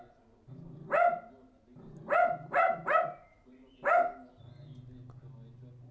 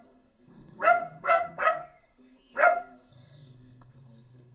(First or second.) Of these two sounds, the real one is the first